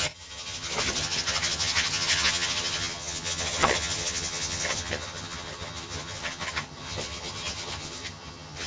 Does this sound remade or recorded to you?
remade